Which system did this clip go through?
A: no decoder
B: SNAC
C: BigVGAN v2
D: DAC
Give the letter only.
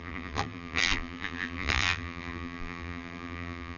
C